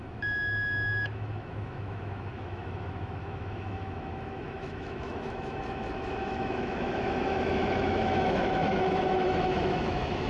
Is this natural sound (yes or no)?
no